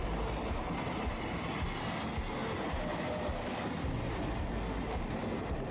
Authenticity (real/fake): real